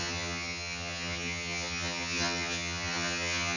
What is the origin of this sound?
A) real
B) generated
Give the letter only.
B